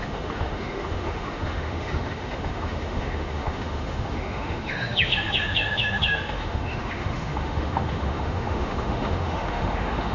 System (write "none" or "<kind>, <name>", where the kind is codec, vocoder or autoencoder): autoencoder, DAC-VAE